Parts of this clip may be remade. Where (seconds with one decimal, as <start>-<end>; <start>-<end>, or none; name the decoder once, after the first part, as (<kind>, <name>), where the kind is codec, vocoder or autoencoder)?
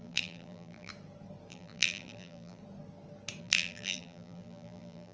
0.0-0.9 (vocoder, BigVGAN v2); 1.5-2.6; 3.4-5.1